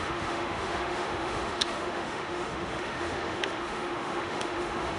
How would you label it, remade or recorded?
remade